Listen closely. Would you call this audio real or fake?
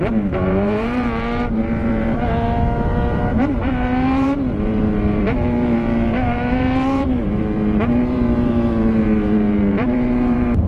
fake